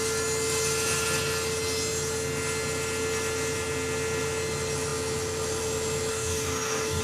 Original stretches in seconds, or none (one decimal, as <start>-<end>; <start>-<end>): 0.0-6.1